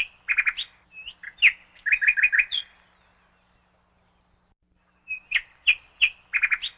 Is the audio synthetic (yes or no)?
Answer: no